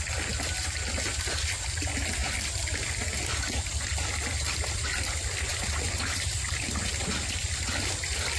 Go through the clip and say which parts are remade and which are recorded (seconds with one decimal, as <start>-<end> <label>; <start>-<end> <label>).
0.0-8.4 recorded